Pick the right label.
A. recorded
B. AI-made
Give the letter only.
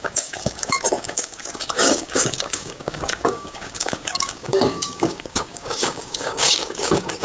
B